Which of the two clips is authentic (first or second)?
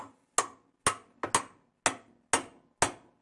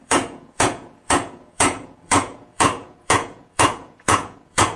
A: first